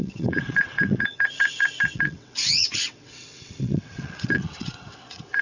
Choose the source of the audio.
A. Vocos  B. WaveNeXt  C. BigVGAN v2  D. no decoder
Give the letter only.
B